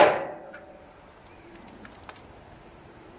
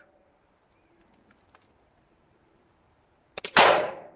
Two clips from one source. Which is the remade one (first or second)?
second